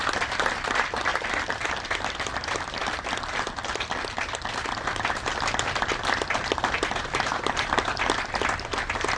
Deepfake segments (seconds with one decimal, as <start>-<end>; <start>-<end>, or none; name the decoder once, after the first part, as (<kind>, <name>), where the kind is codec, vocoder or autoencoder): 0.0-9.2 (vocoder, BigVGAN v2)